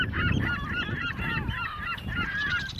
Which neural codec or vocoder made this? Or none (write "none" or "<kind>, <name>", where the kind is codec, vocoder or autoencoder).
vocoder, BigVGAN v2